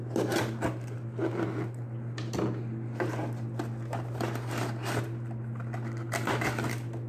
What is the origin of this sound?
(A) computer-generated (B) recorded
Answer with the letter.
B